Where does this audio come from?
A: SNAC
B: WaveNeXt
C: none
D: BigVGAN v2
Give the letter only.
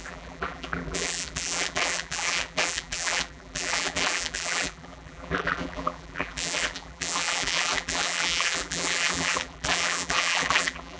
D